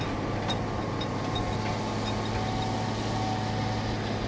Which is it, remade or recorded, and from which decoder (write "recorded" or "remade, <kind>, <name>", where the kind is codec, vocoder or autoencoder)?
recorded